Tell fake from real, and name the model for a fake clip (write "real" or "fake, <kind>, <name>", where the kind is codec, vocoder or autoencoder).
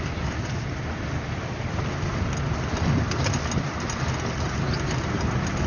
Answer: real